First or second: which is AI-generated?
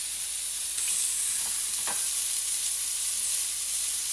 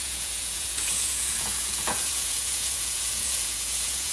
second